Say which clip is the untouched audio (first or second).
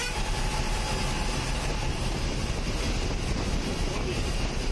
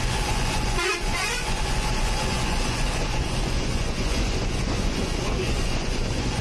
first